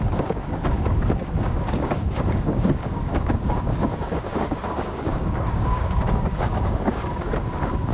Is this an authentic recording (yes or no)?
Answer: no